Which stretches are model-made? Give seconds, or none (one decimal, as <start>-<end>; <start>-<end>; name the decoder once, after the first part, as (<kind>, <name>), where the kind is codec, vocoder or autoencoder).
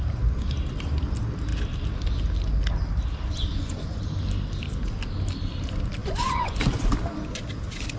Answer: 3.5-4.0 (vocoder, Vocos); 6.0-6.6